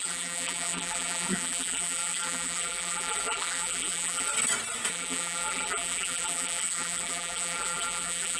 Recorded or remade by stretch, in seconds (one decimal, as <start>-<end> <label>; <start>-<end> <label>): 0.0-4.3 remade; 4.3-4.9 recorded; 4.9-8.4 remade